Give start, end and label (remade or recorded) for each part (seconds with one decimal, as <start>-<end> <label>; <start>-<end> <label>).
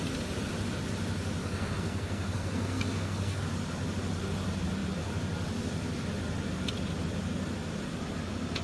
0.0-1.4 recorded; 1.4-3.4 remade; 3.4-8.6 recorded